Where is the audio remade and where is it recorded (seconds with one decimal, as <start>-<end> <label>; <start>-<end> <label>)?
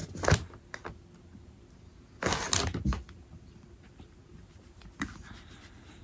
0.0-6.0 recorded